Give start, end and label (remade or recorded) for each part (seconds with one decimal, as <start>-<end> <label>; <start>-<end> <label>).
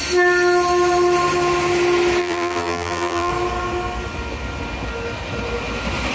0.0-2.2 recorded; 2.2-3.3 remade; 3.3-6.1 recorded